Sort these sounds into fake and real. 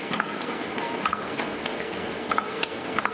fake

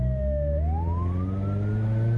real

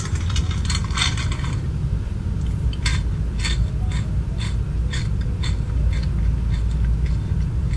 real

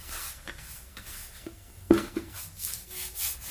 fake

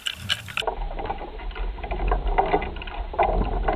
real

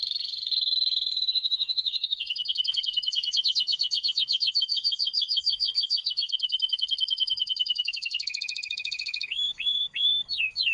fake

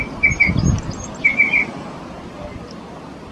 real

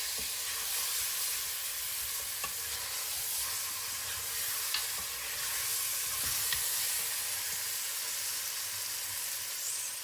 real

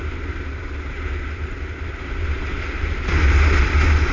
real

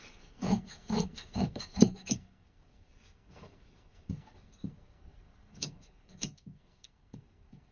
fake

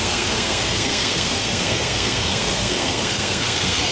fake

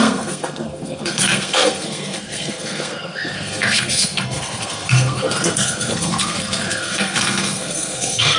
fake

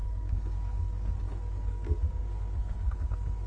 fake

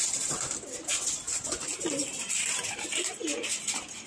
real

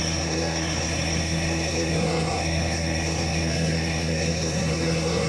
fake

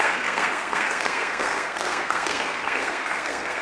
fake